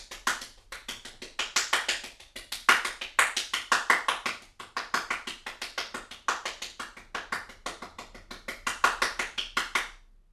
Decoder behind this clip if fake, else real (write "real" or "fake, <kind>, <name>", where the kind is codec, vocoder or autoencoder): real